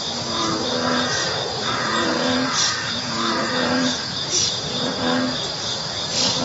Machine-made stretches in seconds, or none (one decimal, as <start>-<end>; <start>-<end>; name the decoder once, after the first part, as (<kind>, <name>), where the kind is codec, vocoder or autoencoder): 1.2-5.0 (vocoder, Vocos)